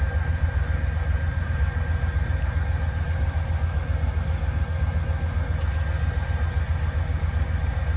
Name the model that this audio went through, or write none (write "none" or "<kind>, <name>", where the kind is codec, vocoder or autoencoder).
none